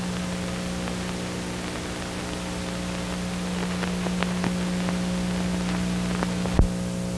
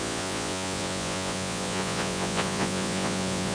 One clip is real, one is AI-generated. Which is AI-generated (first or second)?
second